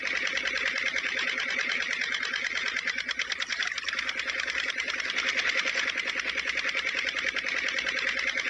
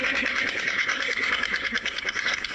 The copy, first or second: second